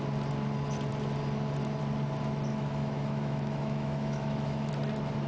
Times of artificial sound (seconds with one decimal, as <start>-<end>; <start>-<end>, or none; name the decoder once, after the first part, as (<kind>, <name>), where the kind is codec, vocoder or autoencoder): 2.5-4.7 (autoencoder, DAC-VAE)